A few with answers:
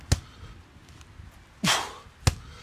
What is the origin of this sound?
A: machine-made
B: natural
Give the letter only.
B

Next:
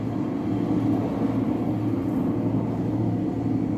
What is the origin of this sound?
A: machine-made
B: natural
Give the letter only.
B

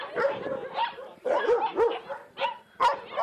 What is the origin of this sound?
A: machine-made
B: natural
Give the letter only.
B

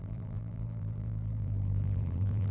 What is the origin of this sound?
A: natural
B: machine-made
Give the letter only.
B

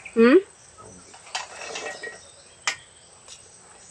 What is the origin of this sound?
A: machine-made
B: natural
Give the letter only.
B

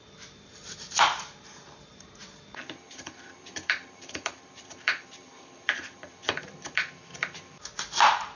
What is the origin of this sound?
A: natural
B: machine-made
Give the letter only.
B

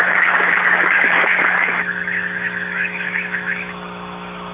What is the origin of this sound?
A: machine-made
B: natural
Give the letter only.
A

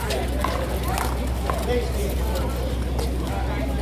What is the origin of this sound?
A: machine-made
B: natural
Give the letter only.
B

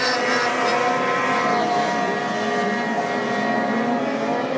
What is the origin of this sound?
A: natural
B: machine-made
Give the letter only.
A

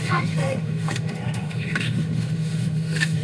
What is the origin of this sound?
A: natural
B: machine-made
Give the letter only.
B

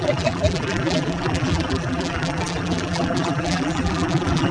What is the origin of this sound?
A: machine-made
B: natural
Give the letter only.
A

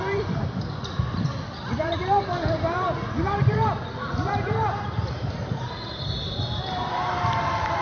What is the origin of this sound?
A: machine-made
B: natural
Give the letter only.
A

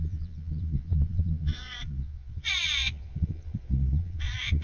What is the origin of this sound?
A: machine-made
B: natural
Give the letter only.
A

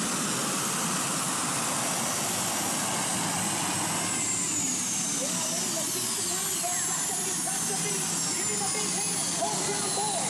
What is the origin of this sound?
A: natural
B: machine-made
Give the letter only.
A